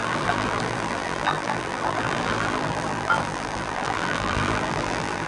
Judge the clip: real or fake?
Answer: fake